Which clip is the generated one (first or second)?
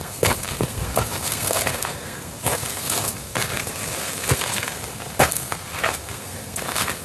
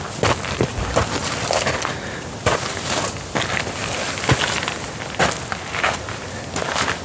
first